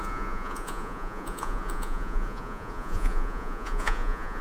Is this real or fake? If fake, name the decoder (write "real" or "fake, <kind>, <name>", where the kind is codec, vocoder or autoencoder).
fake, vocoder, Vocos